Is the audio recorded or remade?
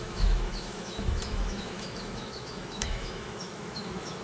remade